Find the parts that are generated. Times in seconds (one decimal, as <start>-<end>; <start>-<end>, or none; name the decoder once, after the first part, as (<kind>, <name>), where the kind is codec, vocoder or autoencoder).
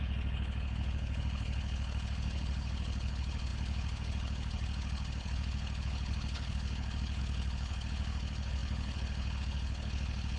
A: 0.0-10.4 (codec, HILCodec)